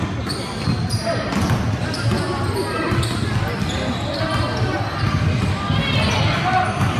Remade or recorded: recorded